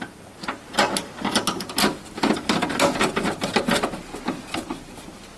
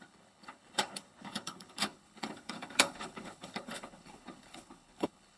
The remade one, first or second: second